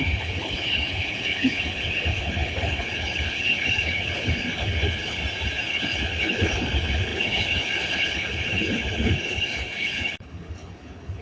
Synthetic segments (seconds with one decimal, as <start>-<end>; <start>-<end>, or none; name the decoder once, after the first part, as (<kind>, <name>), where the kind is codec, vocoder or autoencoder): 0.0-5.2 (codec, HILCodec); 5.7-11.2